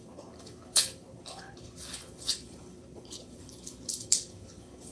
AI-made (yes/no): yes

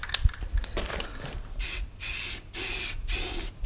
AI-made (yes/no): no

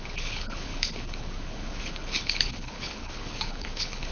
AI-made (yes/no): yes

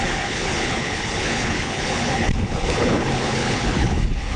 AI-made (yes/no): yes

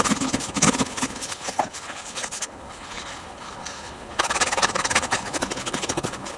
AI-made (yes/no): yes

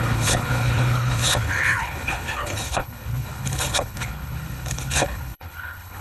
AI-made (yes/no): yes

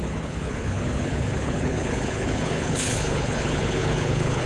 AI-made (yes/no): yes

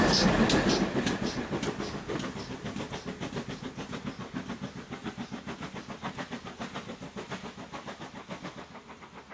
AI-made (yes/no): no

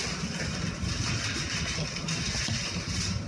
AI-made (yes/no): no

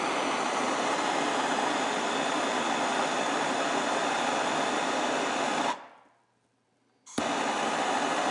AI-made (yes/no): no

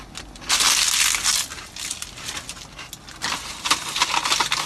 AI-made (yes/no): no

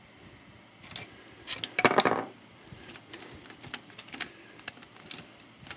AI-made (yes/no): no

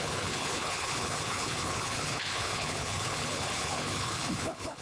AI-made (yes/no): yes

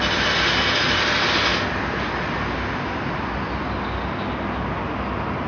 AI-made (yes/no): no